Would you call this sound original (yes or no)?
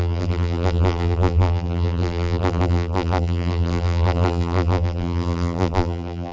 no